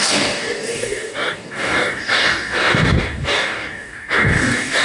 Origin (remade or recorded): remade